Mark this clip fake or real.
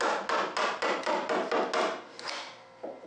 real